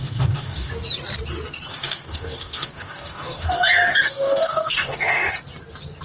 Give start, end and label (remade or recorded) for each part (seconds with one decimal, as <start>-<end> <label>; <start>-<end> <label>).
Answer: 0.0-0.7 remade; 0.7-1.7 recorded; 1.7-5.3 remade; 5.3-6.0 recorded